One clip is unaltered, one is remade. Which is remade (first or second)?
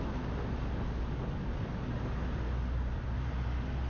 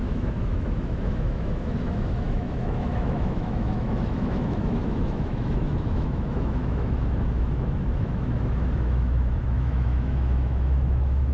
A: second